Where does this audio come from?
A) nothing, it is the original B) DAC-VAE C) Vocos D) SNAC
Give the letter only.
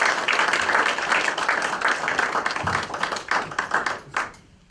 A